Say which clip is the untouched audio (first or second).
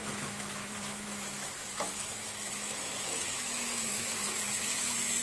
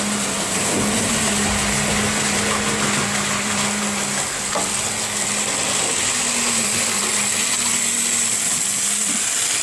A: second